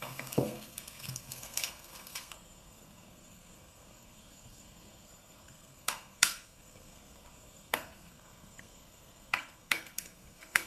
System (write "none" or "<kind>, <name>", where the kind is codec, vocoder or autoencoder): codec, SNAC